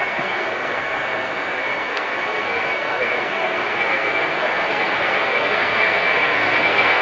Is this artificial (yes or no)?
yes